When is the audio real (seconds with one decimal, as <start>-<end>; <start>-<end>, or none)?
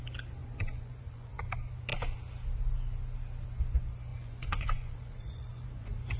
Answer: 0.0-0.4; 1.4-4.1